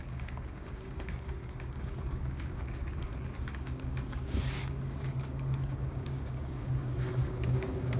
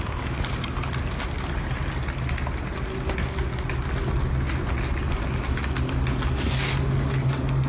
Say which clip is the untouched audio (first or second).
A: second